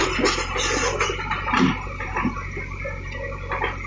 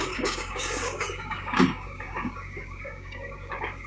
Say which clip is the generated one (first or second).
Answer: second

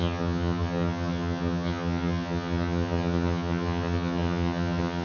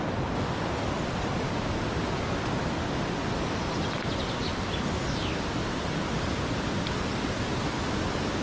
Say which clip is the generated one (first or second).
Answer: first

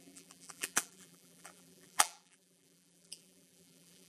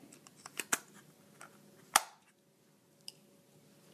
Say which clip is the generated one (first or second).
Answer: first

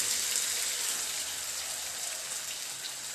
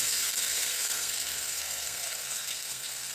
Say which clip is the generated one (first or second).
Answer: second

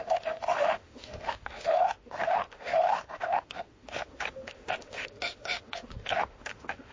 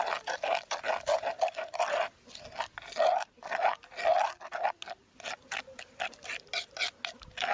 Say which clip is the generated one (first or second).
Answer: first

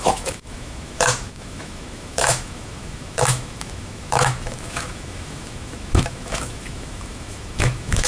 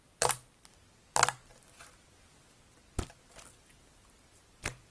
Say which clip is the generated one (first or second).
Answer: first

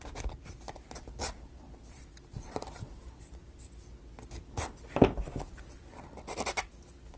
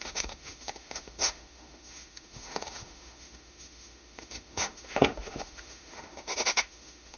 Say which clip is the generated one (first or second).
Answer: second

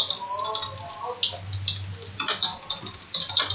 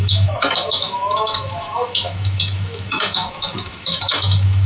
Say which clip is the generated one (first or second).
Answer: second